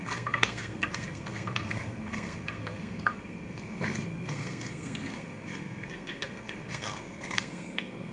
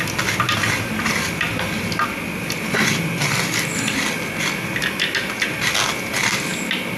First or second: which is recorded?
second